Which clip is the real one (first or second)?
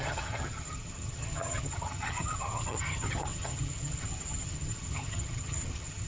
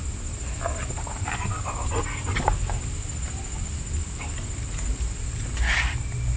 second